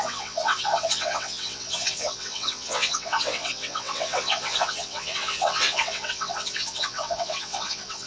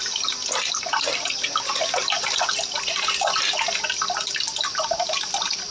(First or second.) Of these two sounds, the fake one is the first